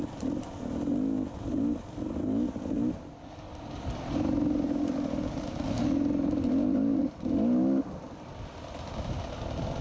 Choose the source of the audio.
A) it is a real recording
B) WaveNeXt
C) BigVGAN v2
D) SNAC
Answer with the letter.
A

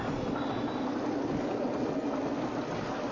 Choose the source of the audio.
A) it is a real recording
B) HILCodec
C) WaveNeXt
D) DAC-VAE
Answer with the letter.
A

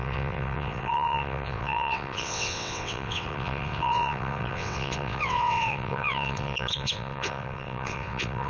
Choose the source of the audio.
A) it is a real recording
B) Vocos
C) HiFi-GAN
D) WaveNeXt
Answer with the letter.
D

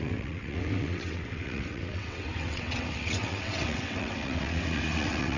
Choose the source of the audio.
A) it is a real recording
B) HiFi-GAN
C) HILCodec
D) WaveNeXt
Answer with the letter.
D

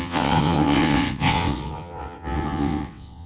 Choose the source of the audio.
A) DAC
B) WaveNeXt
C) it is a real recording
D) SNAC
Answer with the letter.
B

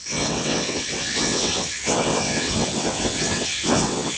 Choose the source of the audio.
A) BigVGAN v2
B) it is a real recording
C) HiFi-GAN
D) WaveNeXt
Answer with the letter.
D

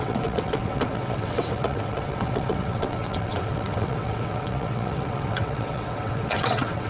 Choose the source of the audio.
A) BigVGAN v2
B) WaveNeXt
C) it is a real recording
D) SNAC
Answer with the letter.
B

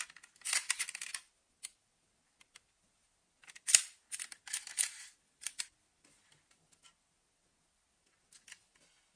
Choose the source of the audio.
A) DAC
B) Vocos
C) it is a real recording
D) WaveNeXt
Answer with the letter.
C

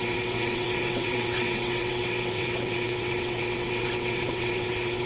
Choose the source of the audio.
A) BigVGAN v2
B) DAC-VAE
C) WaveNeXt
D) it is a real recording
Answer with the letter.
C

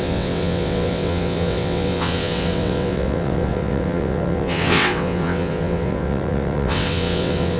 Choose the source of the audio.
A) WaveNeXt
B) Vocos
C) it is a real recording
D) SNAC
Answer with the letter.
A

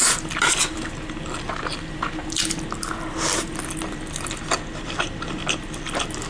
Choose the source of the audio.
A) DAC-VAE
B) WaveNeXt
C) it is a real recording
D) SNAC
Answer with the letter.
C